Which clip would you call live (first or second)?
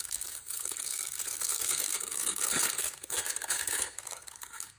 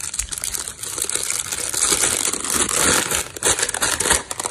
second